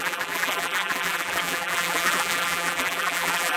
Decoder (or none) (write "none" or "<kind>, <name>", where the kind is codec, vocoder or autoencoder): vocoder, BigVGAN v2